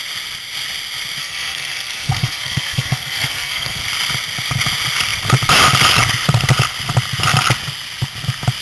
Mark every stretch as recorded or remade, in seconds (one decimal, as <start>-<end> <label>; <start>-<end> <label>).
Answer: 0.0-1.2 recorded; 1.2-3.8 remade; 3.8-8.6 recorded